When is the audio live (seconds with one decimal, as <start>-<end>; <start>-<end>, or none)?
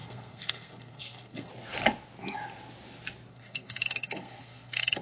1.5-3.3